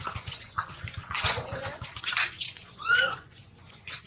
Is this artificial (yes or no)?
yes